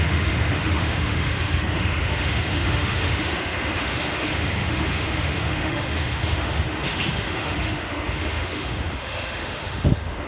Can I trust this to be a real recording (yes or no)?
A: no